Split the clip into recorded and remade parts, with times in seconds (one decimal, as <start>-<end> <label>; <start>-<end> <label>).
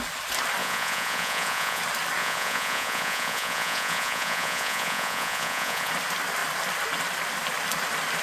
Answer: 0.0-0.6 recorded; 0.6-1.8 remade; 1.8-2.2 recorded; 2.2-5.9 remade; 5.9-8.2 recorded